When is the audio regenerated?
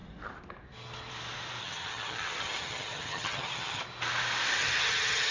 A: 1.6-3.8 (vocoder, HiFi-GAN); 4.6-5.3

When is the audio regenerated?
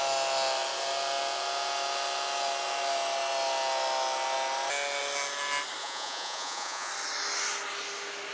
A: 5.8-6.9 (vocoder, Vocos)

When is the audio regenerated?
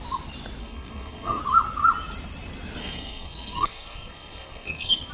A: 0.6-1.4 (codec, SNAC); 2.8-5.1